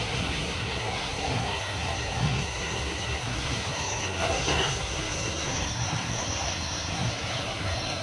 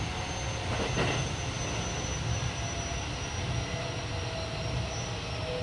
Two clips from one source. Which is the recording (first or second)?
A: second